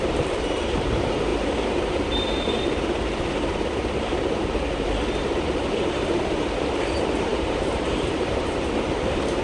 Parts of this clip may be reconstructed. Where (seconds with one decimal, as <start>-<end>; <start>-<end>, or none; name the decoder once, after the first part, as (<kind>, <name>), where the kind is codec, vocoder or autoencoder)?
0.0-9.4 (vocoder, BigVGAN v2)